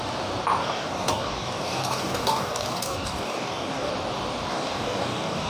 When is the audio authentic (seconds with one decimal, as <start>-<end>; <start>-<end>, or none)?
0.0-0.6; 3.9-4.5